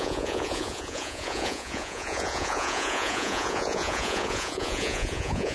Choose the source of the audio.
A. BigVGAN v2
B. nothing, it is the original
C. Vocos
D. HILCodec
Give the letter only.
C